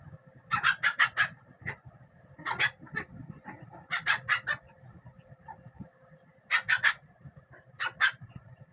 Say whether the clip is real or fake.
real